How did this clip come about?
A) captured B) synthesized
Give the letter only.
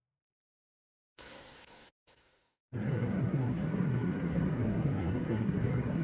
B